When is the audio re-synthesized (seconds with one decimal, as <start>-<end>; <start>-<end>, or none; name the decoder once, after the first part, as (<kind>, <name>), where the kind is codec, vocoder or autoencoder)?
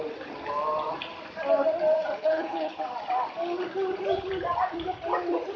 2.2-2.8 (codec, HILCodec)